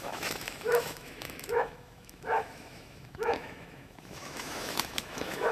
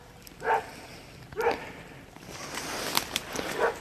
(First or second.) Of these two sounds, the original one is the second